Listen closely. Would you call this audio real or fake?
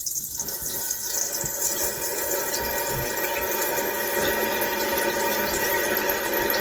real